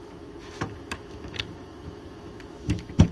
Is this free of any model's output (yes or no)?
no